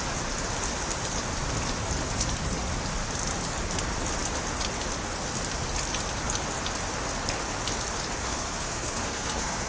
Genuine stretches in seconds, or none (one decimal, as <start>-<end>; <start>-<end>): 0.0-8.2